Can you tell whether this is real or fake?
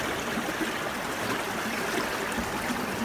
real